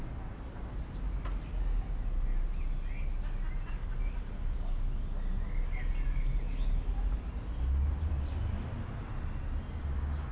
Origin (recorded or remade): recorded